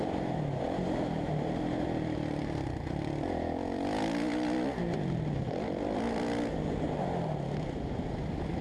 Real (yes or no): yes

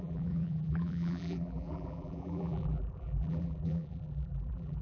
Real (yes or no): no